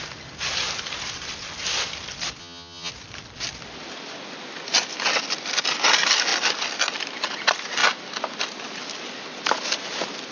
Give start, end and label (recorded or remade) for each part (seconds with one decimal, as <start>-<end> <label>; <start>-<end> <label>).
0.0-2.4 recorded; 2.4-2.9 remade; 2.9-10.3 recorded